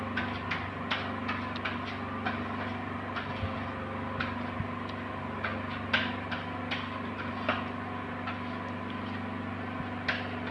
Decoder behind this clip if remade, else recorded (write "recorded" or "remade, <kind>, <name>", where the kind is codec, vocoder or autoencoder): recorded